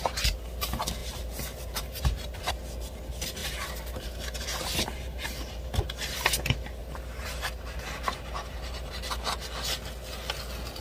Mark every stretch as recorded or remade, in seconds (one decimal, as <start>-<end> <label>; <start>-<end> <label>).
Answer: 0.0-1.0 recorded; 1.0-2.5 remade; 2.5-3.4 recorded; 3.4-5.4 remade; 5.4-6.8 recorded; 6.8-8.9 remade; 8.9-10.8 recorded